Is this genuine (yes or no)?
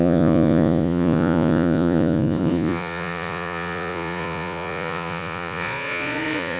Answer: no